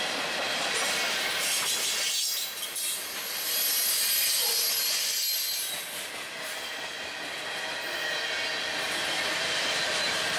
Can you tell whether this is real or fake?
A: real